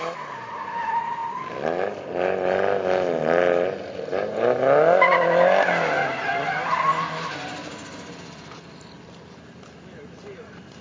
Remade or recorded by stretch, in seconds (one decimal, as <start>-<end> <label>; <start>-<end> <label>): 0.0-10.8 recorded